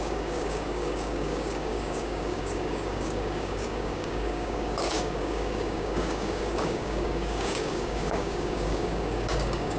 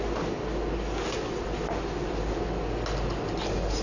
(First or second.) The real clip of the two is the second